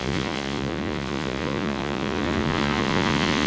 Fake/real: fake